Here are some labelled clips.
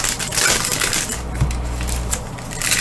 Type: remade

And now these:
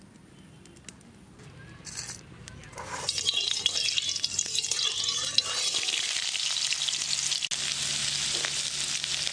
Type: recorded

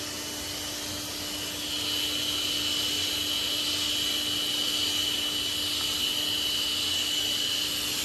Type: recorded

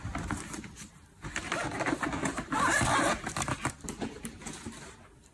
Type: remade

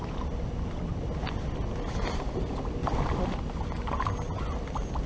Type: recorded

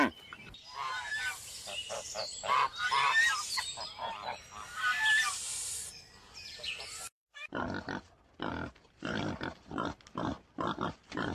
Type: recorded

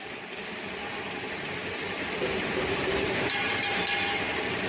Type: remade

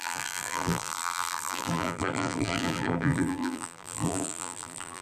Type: remade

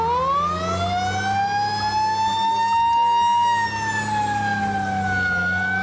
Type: recorded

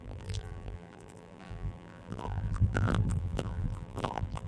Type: remade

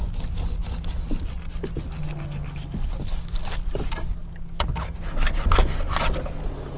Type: recorded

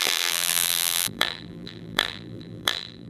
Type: remade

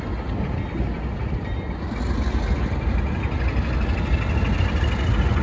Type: recorded